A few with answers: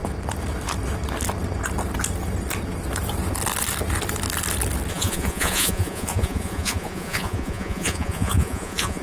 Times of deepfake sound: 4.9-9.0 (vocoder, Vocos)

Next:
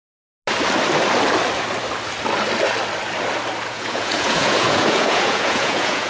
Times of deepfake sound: 3.7-6.1 (vocoder, Vocos)

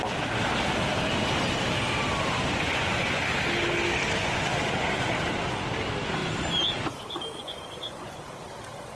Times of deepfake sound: 2.3-3.3 (vocoder, Vocos); 4.2-5.1; 7.4-8.2

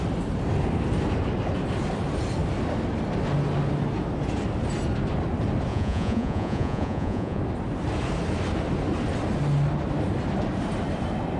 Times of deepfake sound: 5.7-7.4 (vocoder, Vocos)

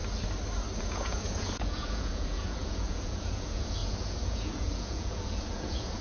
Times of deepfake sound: 0.8-6.0 (vocoder, Vocos)